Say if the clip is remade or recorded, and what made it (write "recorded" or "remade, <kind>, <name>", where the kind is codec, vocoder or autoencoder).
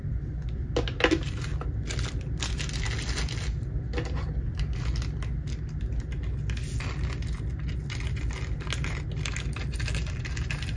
recorded